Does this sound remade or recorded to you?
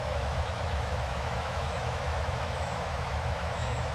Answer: remade